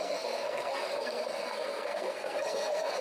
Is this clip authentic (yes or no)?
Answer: no